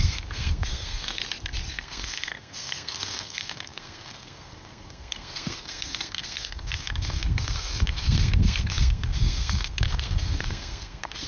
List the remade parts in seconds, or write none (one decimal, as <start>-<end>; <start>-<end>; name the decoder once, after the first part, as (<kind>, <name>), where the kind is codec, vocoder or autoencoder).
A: 0.0-1.2 (codec, SNAC); 1.7-11.3